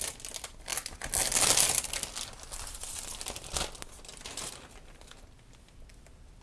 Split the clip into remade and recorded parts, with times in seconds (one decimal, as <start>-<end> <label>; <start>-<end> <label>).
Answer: 0.0-6.4 recorded